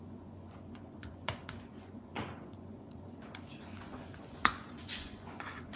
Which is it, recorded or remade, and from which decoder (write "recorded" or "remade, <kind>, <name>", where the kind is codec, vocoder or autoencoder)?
remade, vocoder, Vocos